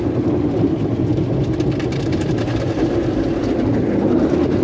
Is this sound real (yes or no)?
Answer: yes